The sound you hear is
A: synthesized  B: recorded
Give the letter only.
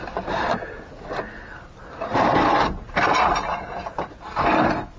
B